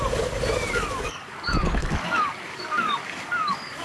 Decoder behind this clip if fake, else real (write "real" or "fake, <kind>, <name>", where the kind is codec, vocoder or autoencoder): fake, codec, DAC